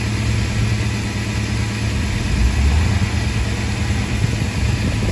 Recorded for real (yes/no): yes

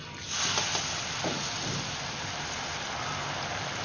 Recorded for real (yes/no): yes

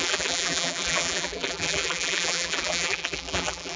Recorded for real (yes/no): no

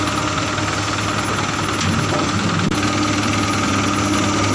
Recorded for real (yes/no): yes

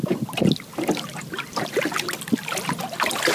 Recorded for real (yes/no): yes